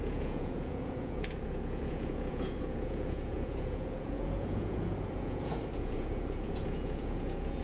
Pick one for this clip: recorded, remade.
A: remade